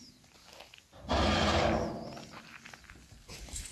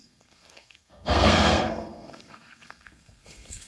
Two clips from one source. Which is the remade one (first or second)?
second